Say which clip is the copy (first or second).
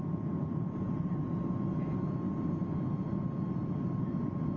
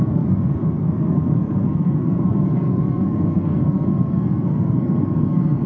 second